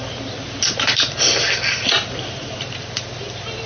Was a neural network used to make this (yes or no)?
no